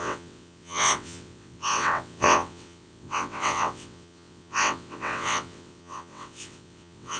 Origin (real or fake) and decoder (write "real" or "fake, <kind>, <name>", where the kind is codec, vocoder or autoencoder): fake, vocoder, WaveNeXt